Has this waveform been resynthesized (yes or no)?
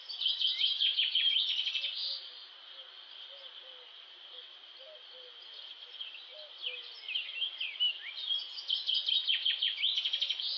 no